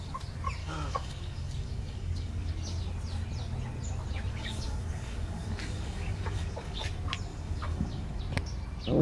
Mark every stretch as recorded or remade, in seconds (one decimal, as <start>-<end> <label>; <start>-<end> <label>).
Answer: 0.0-0.6 recorded; 0.6-2.5 remade; 2.5-4.3 recorded; 4.3-6.8 remade; 6.8-7.3 recorded; 7.3-8.2 remade; 8.2-9.0 recorded